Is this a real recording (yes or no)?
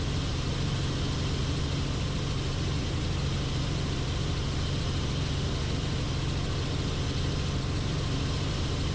yes